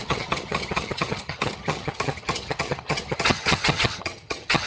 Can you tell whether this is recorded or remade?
remade